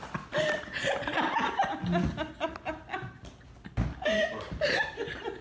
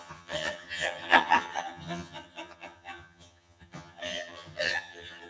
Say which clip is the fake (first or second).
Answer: second